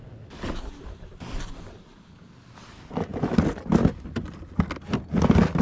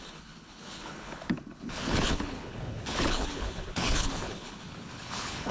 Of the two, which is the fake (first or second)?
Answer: second